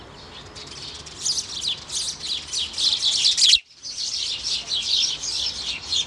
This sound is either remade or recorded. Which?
recorded